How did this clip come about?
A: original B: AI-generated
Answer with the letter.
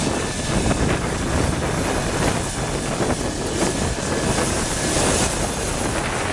A